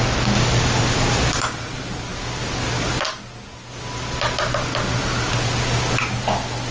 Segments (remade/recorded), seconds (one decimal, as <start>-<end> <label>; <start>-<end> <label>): 0.0-6.7 recorded